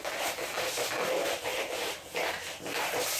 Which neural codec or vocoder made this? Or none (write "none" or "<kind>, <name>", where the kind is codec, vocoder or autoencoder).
none